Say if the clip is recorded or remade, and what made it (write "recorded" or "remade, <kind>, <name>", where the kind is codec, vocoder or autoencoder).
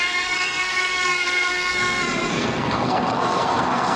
remade, codec, SNAC